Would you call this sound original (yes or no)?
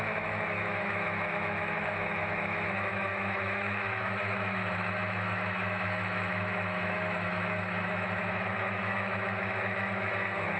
no